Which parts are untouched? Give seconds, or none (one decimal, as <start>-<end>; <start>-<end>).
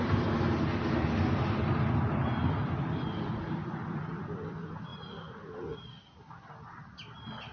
0.0-7.5